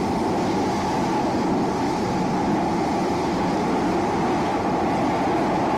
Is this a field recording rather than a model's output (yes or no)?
yes